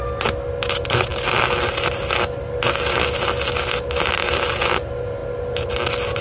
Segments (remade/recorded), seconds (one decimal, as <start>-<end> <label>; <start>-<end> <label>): 0.0-6.2 recorded